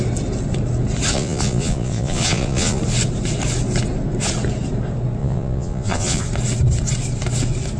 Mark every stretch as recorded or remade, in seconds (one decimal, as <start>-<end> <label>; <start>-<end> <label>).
0.0-1.1 recorded; 1.1-2.8 remade; 2.8-5.2 recorded; 5.2-6.2 remade; 6.2-7.8 recorded